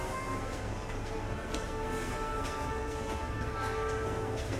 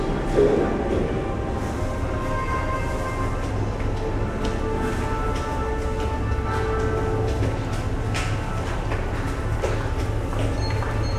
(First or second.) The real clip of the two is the second